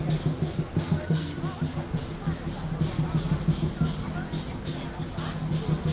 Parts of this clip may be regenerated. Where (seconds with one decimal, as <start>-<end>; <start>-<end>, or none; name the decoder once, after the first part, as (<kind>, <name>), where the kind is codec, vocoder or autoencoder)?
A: 0.7-1.4 (codec, SNAC)